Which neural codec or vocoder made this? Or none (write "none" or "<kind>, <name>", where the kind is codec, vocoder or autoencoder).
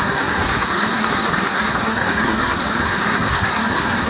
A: codec, SNAC